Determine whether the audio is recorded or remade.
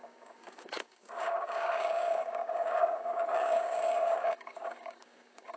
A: remade